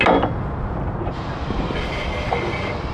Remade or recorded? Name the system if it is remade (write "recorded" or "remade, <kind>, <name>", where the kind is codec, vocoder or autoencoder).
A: recorded